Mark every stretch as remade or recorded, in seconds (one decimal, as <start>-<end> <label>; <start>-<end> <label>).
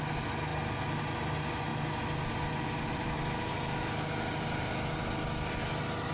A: 0.0-6.1 recorded